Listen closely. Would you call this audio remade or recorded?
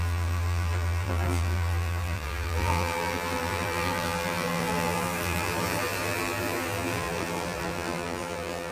remade